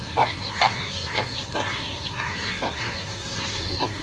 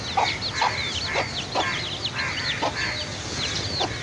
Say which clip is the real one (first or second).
second